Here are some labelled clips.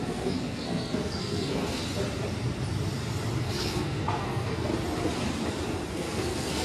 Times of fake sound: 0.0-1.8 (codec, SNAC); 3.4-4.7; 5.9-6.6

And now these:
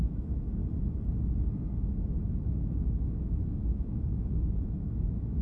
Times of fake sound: 0.0-0.6 (autoencoder, DAC-VAE); 2.3-5.4

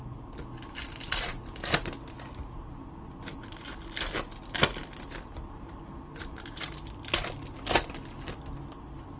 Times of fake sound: none

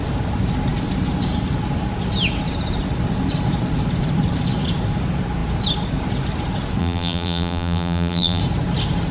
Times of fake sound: 6.8-8.4 (vocoder, BigVGAN v2)

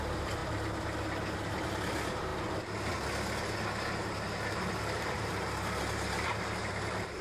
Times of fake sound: 0.0-0.4 (vocoder, BigVGAN v2); 1.6-2.3; 4.8-7.2

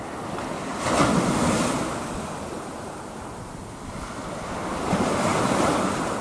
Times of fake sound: none